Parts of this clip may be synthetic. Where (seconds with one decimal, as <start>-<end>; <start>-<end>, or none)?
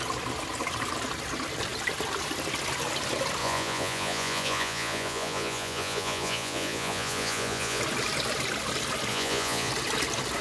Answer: 3.4-7.8; 9.1-9.7